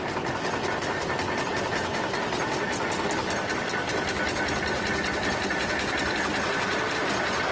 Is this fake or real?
real